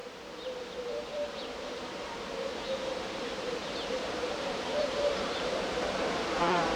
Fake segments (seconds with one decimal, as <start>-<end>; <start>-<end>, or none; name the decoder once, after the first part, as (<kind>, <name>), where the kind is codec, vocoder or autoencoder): 0.7-6.8 (vocoder, BigVGAN v2)